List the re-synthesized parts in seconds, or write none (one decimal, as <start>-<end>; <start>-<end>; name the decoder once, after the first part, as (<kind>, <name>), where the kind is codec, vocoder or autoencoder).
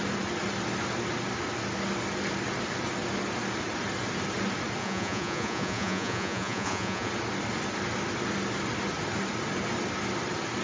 4.8-7.1 (vocoder, Vocos)